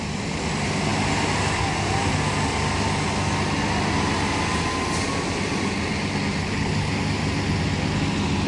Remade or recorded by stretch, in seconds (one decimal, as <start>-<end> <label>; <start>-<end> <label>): 0.0-6.4 recorded; 6.4-6.9 remade; 6.9-8.5 recorded